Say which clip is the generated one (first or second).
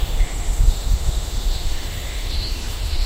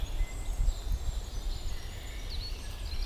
first